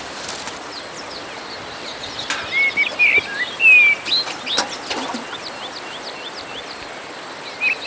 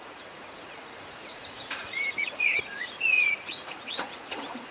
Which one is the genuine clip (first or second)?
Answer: first